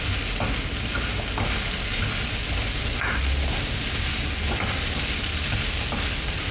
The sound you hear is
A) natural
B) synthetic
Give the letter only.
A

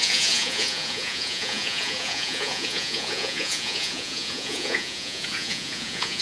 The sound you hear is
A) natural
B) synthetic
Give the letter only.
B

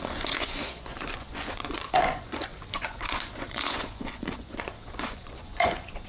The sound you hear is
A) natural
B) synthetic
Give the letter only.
B